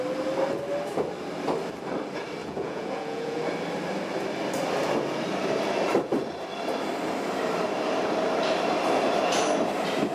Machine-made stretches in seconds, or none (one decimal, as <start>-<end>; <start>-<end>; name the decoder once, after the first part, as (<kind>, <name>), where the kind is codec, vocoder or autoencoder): 2.4-3.4 (vocoder, Vocos)